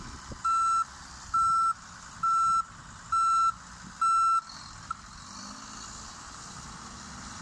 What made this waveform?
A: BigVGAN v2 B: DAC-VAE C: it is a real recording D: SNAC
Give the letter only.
C